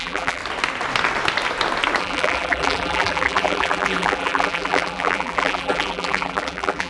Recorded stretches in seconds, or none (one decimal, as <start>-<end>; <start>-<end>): 0.4-2.0